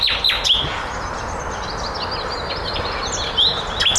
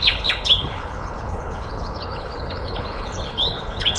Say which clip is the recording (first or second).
first